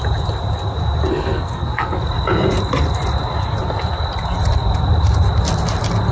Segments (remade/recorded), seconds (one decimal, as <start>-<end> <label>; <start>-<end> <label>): 0.0-1.1 recorded; 1.1-2.0 remade; 2.0-6.1 recorded